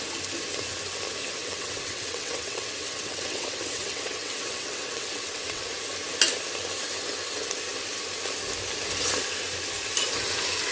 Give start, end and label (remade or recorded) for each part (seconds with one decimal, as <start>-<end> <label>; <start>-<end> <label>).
0.0-1.4 recorded; 1.4-5.6 remade; 5.6-10.7 recorded